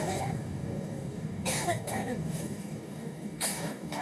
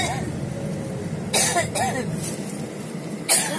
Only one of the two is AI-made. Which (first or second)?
first